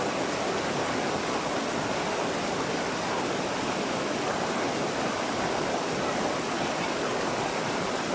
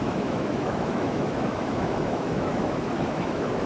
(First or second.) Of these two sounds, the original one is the first